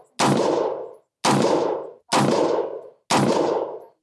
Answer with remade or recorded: recorded